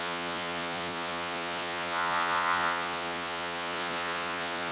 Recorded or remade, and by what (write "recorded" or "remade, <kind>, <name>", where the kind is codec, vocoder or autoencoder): remade, vocoder, Vocos